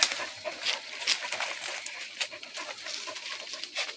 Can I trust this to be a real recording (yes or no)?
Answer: yes